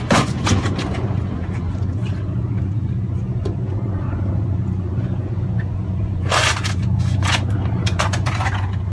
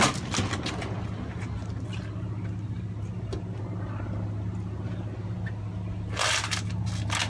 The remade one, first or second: first